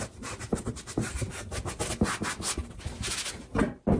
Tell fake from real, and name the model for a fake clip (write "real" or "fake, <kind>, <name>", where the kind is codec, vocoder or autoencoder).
real